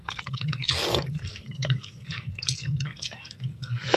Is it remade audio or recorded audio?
remade